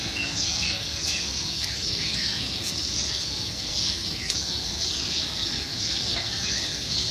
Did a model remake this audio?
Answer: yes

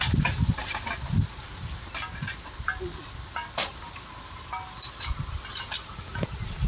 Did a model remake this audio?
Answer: no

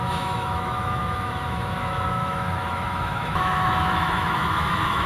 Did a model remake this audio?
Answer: yes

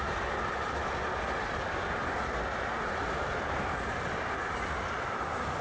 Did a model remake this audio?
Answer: no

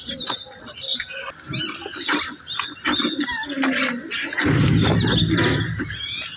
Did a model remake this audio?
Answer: no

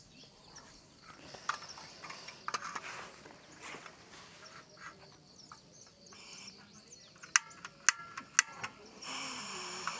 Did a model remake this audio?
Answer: no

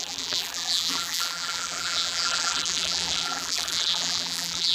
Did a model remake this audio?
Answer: yes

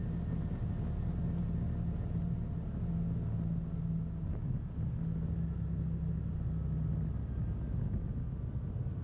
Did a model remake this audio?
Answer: no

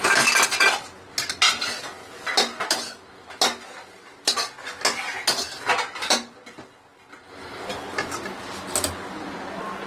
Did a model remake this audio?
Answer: no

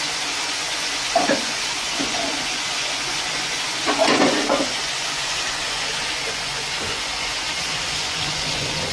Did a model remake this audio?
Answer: yes